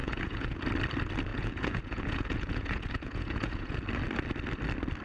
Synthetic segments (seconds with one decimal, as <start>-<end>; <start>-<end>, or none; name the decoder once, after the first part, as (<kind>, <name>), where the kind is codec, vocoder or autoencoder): 0.0-0.6 (vocoder, Vocos); 1.3-3.8